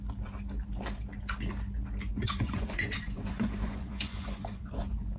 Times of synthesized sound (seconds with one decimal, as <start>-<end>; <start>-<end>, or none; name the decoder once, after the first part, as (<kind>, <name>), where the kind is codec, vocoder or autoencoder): 2.1-5.2 (vocoder, Vocos)